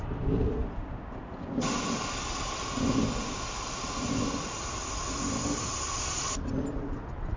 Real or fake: real